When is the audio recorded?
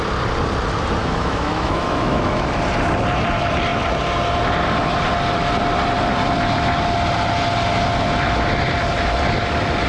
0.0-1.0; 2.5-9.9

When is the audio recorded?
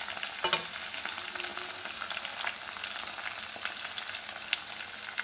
0.0-5.2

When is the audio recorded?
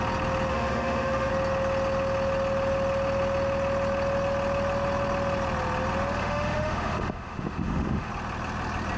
0.0-0.5; 1.3-6.2; 8.1-9.0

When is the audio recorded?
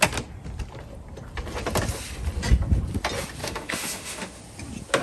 0.0-3.4; 4.4-5.0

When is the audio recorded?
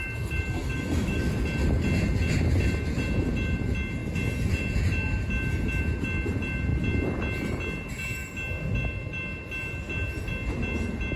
0.0-0.6; 1.3-11.2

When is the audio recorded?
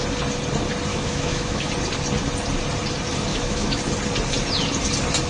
0.0-0.9; 1.7-3.3; 3.8-5.3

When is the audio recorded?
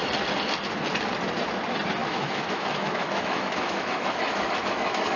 0.0-2.0